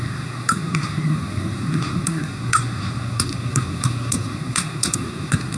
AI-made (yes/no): yes